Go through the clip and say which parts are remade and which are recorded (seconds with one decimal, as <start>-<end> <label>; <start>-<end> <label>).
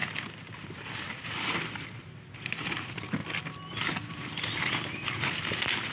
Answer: 0.0-5.9 recorded